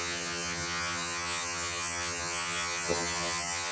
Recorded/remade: remade